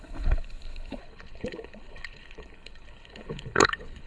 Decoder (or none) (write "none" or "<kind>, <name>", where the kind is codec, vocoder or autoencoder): codec, HILCodec